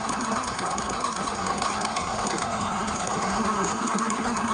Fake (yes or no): yes